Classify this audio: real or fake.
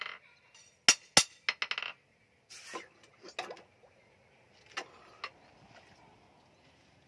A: real